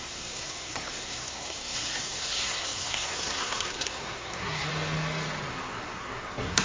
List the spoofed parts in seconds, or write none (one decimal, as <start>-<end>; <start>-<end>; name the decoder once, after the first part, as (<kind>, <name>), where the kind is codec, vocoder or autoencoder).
0.0-4.7 (codec, SNAC); 5.5-6.6